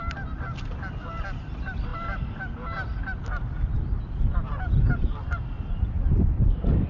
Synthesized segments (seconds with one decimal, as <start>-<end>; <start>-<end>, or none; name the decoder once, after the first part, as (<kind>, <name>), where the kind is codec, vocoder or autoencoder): none